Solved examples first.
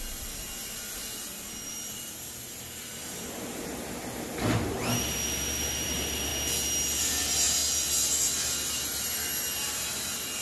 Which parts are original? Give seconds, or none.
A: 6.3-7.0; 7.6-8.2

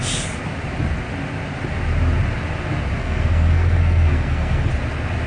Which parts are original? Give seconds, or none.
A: 0.0-3.0; 4.7-5.3